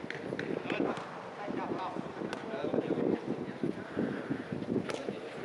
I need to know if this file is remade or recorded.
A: recorded